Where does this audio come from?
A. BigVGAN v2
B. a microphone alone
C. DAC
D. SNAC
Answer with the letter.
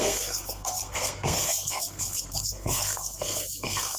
D